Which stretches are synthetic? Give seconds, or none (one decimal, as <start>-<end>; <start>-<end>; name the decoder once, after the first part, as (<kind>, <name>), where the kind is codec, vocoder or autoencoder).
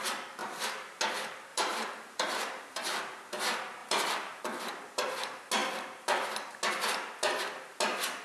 0.4-1.0 (vocoder, BigVGAN v2); 1.5-3.4; 3.8-4.4